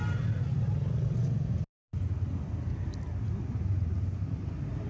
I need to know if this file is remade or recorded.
recorded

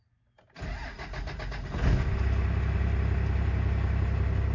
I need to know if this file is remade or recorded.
recorded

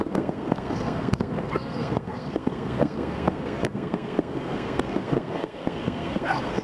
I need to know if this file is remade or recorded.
remade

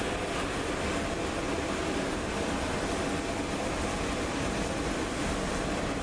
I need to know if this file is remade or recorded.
recorded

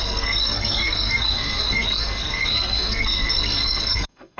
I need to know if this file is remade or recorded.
remade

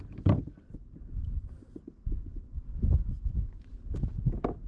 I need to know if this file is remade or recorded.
recorded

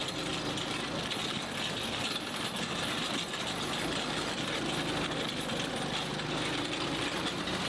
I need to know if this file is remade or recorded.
recorded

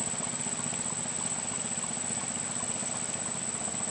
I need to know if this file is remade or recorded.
recorded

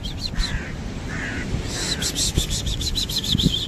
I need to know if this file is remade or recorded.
recorded